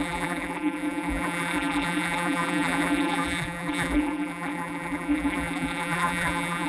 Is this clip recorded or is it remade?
remade